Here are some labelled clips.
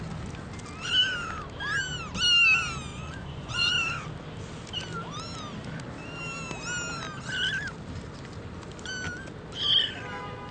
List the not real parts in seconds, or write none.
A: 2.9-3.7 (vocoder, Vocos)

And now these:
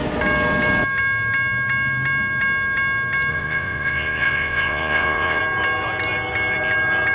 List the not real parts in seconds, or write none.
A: 3.3-5.4 (vocoder, Vocos)

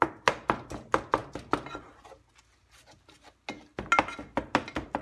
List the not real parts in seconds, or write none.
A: none

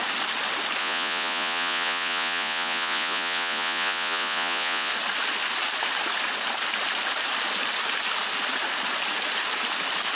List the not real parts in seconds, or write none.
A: 0.8-4.9 (vocoder, Vocos)

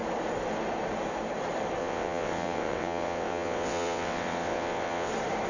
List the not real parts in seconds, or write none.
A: 1.8-5.1 (vocoder, WaveNeXt)

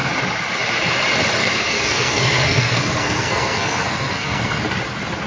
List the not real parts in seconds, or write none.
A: 1.4-4.6 (codec, SNAC)

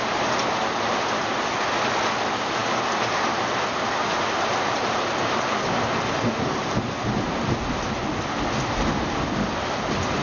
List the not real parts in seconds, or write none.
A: none

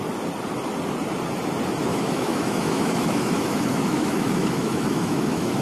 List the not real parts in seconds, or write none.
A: 1.9-5.6 (autoencoder, DAC-VAE)